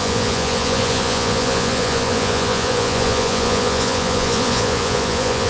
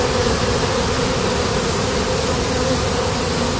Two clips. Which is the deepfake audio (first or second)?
first